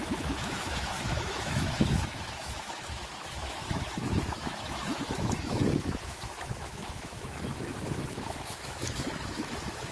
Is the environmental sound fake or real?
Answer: fake